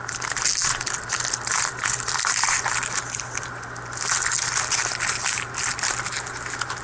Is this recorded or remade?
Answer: recorded